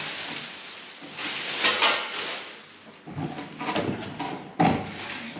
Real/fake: real